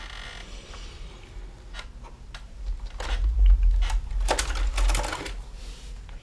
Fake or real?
real